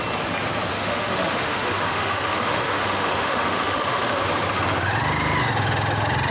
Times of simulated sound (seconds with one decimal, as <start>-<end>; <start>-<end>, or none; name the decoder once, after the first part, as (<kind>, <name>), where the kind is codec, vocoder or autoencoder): 0.7-4.2 (autoencoder, DAC-VAE)